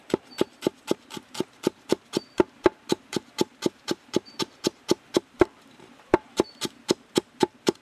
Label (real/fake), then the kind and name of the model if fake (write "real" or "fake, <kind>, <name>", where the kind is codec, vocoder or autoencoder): fake, vocoder, BigVGAN v2